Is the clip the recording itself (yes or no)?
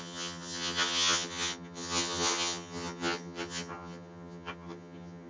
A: no